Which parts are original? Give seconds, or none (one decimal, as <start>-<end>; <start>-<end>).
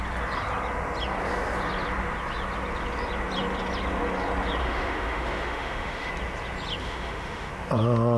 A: 0.0-4.6; 6.1-6.8; 7.5-8.2